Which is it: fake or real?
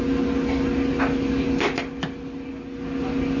real